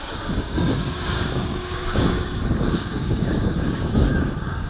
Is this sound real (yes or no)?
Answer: no